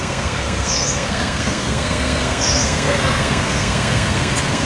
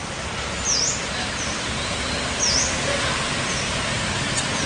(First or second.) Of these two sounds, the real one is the second